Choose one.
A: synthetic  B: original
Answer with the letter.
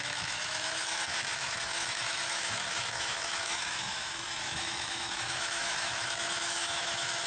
A